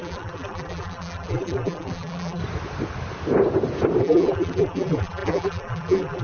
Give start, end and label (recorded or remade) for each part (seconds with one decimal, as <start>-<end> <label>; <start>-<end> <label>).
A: 0.0-2.4 remade; 2.4-4.0 recorded; 4.0-6.2 remade